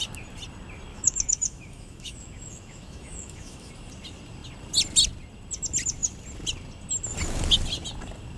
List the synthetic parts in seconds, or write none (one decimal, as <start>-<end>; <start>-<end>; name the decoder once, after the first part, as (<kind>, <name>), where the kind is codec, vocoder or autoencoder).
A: 0.9-3.7 (autoencoder, DAC-VAE)